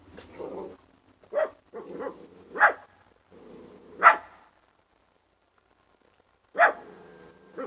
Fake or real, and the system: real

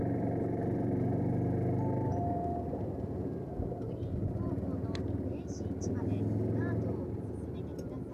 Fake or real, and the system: real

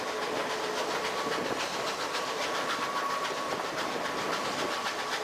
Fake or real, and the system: real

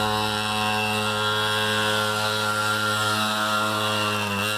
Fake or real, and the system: real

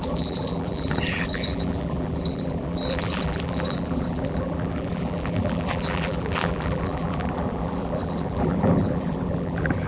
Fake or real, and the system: fake, vocoder, BigVGAN v2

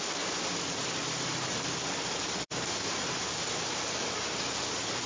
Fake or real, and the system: real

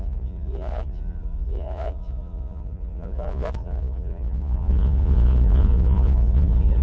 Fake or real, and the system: fake, vocoder, Vocos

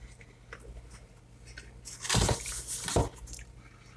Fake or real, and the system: real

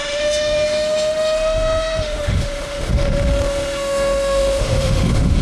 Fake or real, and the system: fake, autoencoder, DAC-VAE